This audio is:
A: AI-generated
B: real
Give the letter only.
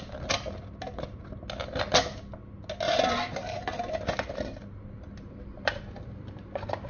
B